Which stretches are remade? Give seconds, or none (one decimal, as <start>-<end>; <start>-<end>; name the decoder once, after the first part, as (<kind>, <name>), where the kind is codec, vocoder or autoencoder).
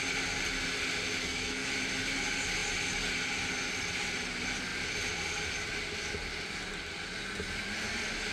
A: 1.2-1.7 (codec, SNAC)